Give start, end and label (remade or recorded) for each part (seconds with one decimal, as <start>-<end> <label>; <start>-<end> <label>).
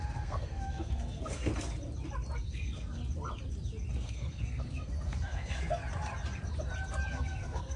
0.0-1.5 remade; 1.5-2.4 recorded; 2.4-3.0 remade; 3.0-3.9 recorded; 3.9-5.8 remade; 5.8-7.1 recorded; 7.1-7.8 remade